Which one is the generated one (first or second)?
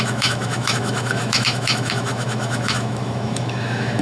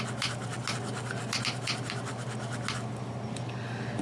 first